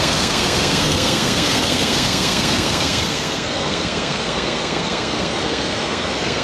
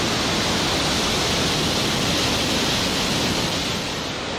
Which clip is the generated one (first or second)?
first